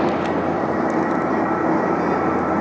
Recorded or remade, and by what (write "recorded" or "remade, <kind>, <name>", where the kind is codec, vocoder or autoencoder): recorded